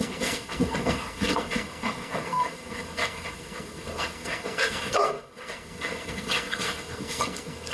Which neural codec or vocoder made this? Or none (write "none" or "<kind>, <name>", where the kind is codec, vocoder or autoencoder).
codec, SNAC